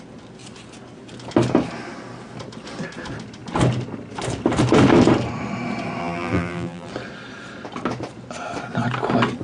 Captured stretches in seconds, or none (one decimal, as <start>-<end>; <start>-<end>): 0.0-6.0; 6.9-9.4